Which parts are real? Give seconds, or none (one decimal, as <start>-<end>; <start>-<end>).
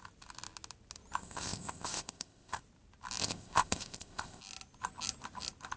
0.0-1.2; 2.6-3.2; 4.4-5.8